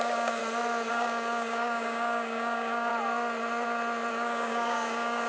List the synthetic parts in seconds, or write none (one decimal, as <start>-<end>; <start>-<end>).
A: 0.0-0.4; 0.9-2.9; 4.1-5.3

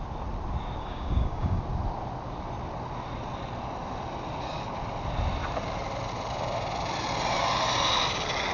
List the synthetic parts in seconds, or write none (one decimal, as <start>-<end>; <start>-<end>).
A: 0.8-1.6